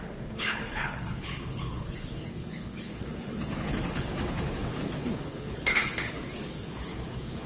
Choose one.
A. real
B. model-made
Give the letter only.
B